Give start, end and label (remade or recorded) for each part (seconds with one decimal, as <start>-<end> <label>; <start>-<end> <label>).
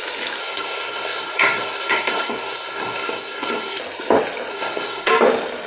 0.0-0.4 recorded; 0.4-3.8 remade; 3.8-4.5 recorded; 4.5-5.1 remade; 5.1-5.7 recorded